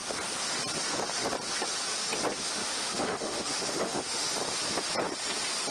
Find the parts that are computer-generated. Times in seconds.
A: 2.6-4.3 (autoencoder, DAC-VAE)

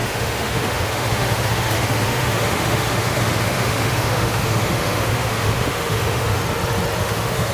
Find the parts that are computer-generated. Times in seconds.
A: 0.0-6.4 (autoencoder, DAC-VAE); 7.0-7.5

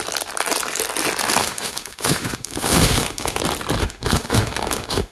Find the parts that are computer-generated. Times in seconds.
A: 1.4-3.4 (autoencoder, DAC-VAE); 3.8-5.1

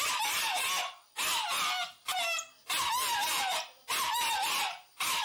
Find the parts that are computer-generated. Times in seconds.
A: none

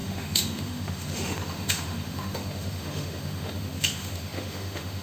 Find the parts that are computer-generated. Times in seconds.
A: 0.0-5.0 (autoencoder, DAC-VAE)

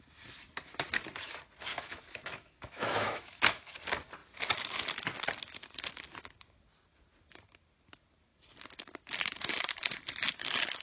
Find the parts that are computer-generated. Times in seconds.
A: 1.7-3.7 (autoencoder, DAC-VAE)